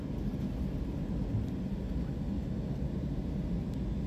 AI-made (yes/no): no